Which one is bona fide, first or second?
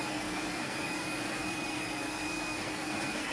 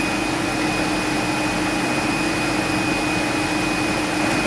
second